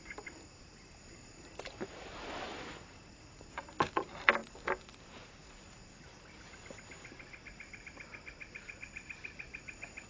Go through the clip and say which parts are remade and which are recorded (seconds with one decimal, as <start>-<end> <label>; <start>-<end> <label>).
0.0-10.1 recorded